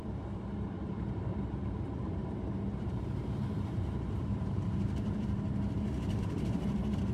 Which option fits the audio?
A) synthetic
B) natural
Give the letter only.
A